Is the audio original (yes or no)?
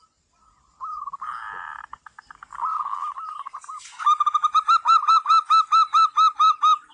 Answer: yes